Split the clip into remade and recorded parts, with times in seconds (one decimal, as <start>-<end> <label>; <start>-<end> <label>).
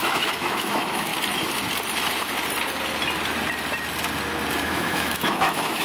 0.0-1.1 remade; 1.1-4.6 recorded; 4.6-5.8 remade